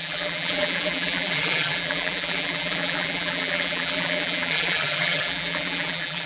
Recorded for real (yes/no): no